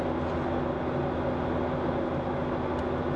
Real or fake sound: real